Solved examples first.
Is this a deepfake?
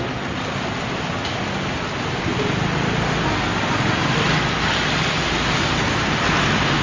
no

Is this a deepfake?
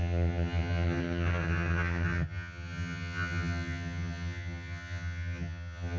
yes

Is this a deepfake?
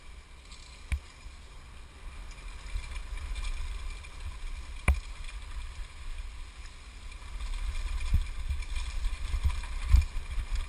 no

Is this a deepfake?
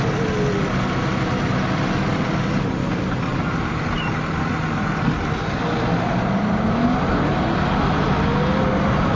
no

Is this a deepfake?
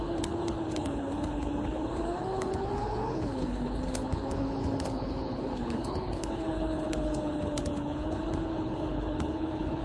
yes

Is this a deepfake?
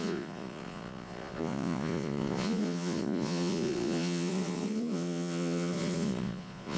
yes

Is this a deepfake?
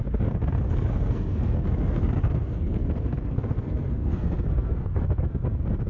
yes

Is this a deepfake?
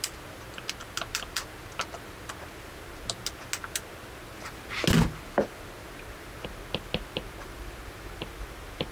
no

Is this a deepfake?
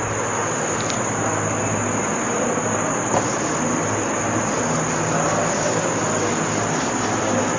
no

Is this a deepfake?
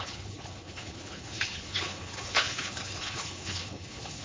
yes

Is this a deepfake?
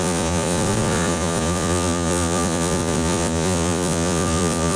yes